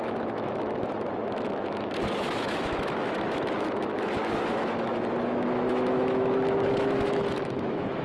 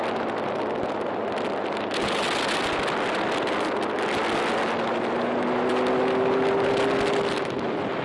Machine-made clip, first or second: first